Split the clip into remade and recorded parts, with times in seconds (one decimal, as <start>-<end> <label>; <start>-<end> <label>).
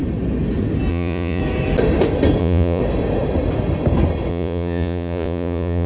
0.0-0.9 recorded; 0.9-1.4 remade; 1.4-2.4 recorded; 2.4-2.8 remade; 2.8-4.3 recorded; 4.3-5.9 remade